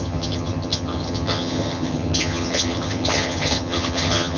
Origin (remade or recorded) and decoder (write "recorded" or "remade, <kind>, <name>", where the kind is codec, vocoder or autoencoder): remade, vocoder, HiFi-GAN